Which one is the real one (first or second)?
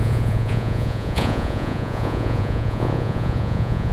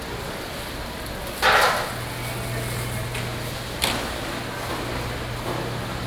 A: second